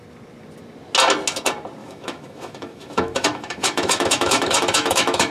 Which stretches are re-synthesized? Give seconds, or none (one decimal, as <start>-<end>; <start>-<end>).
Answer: 1.8-5.3